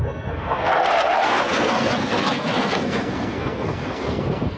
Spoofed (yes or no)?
yes